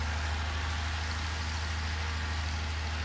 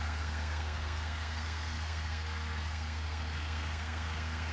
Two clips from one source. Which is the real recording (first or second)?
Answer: first